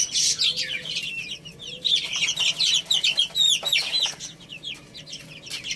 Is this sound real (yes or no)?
yes